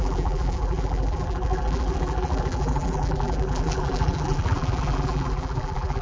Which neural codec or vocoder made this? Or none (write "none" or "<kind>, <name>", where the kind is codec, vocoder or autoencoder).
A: vocoder, BigVGAN v2